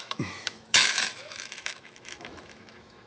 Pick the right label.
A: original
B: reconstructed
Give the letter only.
B